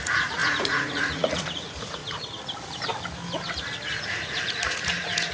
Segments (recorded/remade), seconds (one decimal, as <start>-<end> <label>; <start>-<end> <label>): 0.0-2.0 remade; 2.0-4.0 recorded; 4.0-5.3 remade